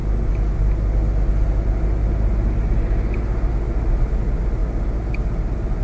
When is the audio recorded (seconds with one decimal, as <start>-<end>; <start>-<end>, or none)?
0.0-5.8